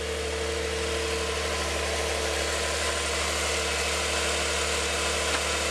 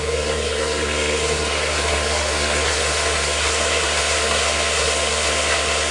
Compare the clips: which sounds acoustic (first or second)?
first